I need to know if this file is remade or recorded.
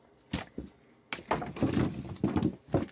recorded